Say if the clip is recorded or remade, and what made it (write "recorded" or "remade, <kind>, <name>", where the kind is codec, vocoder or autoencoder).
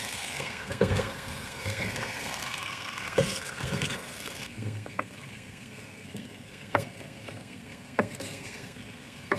remade, codec, SNAC